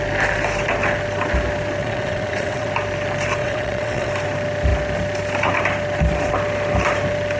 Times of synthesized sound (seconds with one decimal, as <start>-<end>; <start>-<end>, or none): 1.8-2.7; 3.4-4.1